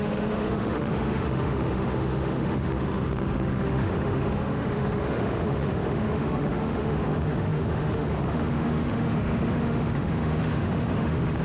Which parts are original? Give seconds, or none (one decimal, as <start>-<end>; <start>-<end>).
none